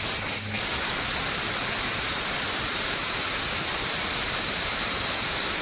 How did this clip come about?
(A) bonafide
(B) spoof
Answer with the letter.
A